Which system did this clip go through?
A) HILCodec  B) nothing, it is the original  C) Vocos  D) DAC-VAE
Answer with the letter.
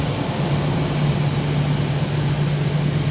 B